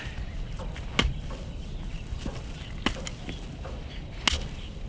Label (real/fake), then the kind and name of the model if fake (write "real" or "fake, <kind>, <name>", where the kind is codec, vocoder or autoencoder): real